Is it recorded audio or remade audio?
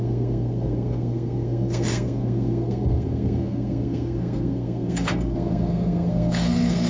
remade